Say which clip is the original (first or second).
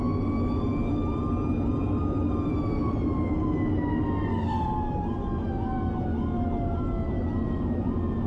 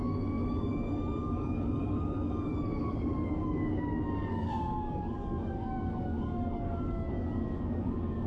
first